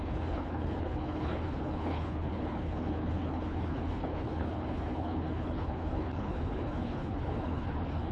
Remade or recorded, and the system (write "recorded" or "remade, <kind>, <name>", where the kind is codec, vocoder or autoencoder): remade, codec, HILCodec